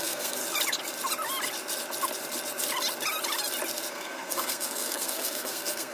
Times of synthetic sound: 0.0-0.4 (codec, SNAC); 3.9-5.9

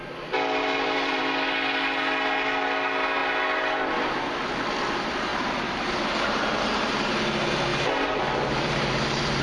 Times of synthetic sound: 0.6-1.2 (vocoder, BigVGAN v2); 5.3-7.2; 7.7-9.4

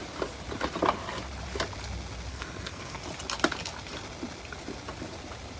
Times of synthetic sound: 2.3-3.0 (codec, SNAC)

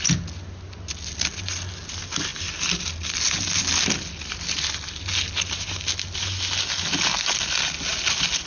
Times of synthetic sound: none

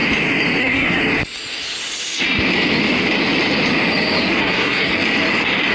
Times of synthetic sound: 0.6-1.0 (codec, SNAC); 4.4-4.9